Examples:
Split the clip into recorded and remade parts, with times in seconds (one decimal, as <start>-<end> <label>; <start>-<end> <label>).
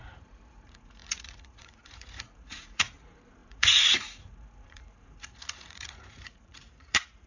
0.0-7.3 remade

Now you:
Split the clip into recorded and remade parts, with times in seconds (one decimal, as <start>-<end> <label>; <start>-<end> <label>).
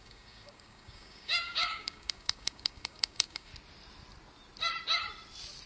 0.0-3.5 remade; 3.5-5.7 recorded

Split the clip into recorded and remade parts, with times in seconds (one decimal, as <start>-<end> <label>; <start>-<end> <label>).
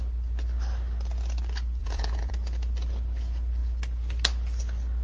0.0-1.8 recorded; 1.8-2.3 remade; 2.3-5.0 recorded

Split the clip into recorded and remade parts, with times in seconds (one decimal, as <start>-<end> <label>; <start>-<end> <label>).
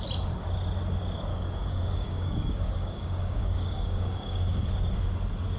0.0-1.3 recorded; 1.3-4.7 remade; 4.7-5.6 recorded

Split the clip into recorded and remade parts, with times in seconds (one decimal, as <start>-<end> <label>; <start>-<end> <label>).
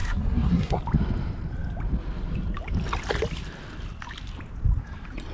0.0-0.8 remade; 0.8-5.3 recorded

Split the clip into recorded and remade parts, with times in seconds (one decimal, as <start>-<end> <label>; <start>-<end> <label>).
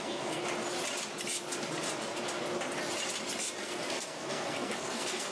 0.0-0.4 remade; 0.4-3.6 recorded; 3.6-5.3 remade